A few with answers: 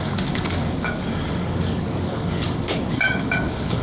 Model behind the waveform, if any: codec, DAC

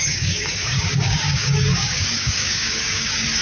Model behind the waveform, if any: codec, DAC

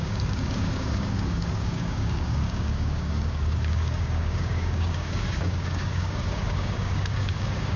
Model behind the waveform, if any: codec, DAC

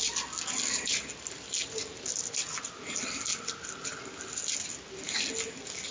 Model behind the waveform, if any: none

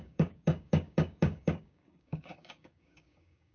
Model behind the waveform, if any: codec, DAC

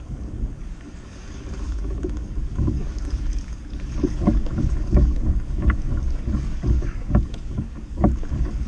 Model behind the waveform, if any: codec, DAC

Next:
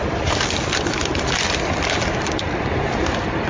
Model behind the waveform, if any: none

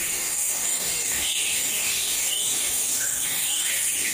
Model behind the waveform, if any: codec, DAC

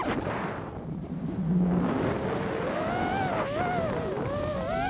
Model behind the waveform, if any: none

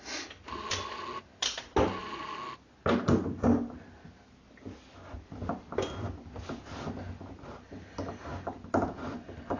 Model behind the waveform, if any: none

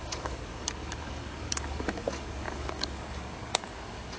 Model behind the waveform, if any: codec, DAC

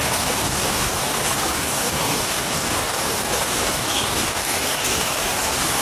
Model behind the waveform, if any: codec, DAC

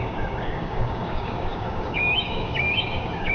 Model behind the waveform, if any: codec, DAC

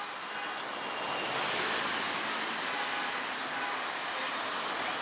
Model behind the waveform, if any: none